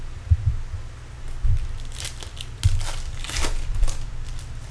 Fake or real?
real